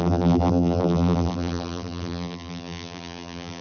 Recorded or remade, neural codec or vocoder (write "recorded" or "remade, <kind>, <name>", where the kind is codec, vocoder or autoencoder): remade, vocoder, BigVGAN v2